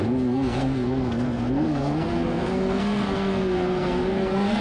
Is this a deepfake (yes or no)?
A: yes